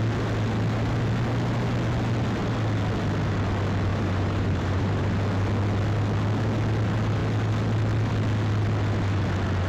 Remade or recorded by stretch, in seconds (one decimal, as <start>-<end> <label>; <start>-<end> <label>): 0.0-3.9 recorded; 3.9-5.1 remade; 5.1-9.7 recorded